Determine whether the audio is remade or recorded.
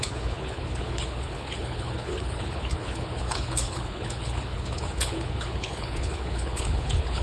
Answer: remade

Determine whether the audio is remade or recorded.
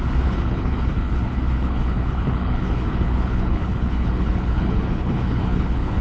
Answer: remade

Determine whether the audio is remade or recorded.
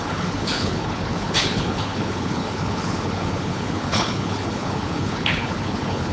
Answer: remade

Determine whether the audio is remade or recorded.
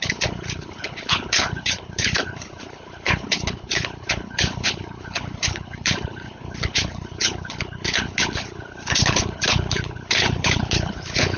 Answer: remade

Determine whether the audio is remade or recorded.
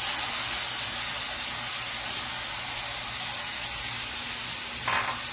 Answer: recorded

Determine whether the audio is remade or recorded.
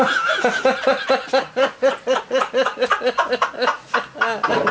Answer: recorded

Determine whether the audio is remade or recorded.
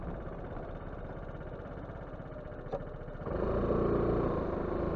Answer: recorded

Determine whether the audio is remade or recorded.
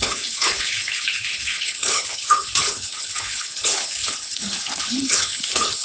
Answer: remade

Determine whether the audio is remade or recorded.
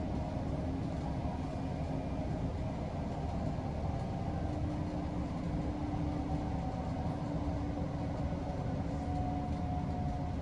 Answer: recorded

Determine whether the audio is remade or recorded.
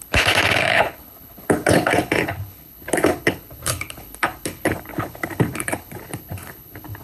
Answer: remade